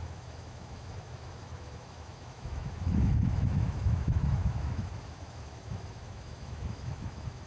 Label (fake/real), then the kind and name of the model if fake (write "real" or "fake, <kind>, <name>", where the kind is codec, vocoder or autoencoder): fake, autoencoder, DAC-VAE